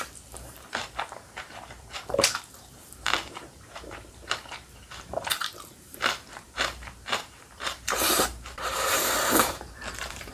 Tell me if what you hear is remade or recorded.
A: remade